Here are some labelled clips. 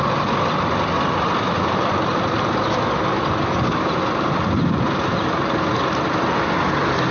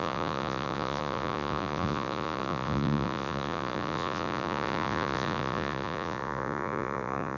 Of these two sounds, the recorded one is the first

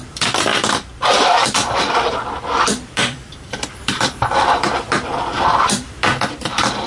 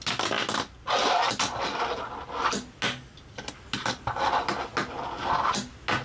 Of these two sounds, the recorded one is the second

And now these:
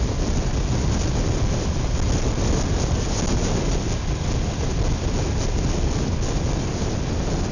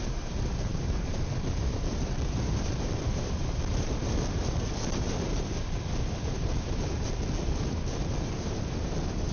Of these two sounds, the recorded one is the first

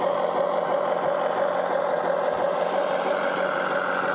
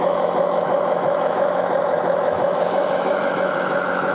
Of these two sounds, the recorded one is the first